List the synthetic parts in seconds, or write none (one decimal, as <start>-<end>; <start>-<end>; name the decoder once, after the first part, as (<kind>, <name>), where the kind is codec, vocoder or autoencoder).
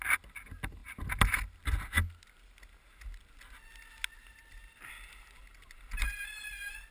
none